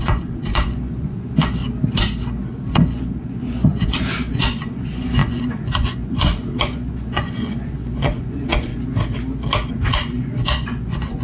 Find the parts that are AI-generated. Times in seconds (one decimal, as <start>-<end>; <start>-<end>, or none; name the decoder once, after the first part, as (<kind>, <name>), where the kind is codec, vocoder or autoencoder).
0.0-1.6 (vocoder, Vocos); 2.7-8.7; 9.7-11.2

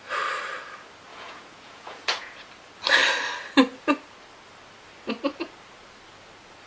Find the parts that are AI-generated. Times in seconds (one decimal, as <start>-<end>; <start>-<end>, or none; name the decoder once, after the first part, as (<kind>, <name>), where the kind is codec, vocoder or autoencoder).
1.1-2.5 (vocoder, Vocos)

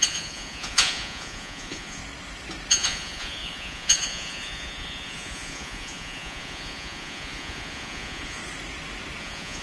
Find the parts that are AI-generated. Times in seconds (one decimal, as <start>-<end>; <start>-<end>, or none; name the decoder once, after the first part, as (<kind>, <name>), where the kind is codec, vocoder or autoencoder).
0.0-2.0 (vocoder, Vocos); 2.7-8.4; 9.2-9.6

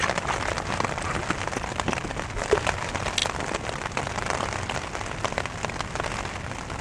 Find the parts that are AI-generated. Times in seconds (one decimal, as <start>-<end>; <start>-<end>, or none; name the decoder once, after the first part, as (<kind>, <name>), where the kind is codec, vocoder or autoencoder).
none